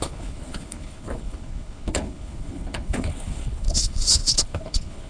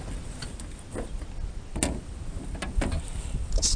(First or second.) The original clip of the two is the second